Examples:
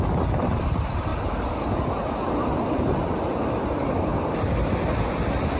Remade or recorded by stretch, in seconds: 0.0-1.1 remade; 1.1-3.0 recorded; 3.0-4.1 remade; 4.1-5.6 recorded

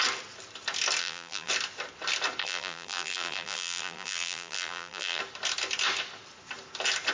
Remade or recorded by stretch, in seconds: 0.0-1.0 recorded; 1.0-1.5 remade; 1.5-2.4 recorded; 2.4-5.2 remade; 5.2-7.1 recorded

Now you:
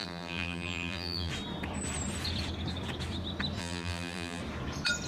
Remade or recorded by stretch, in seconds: 0.0-1.3 remade; 1.3-3.6 recorded; 3.6-4.4 remade; 4.4-5.1 recorded